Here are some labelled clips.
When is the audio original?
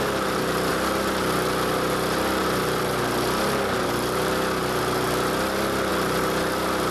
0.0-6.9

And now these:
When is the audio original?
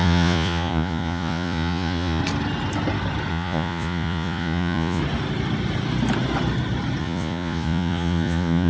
2.2-3.3; 5.0-7.0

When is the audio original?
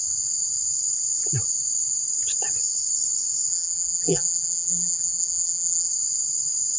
0.0-3.5; 5.9-6.8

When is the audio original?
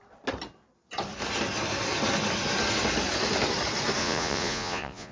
0.0-4.0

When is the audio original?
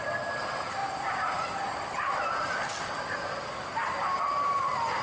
0.0-0.8; 1.5-1.9; 2.8-5.0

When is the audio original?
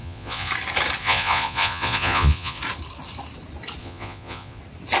0.5-1.0; 2.6-3.8; 4.6-5.0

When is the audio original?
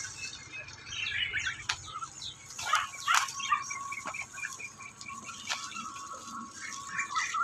0.0-7.4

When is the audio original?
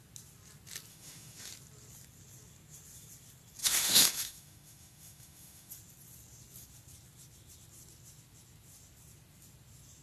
0.0-0.9; 1.5-3.6; 5.7-10.0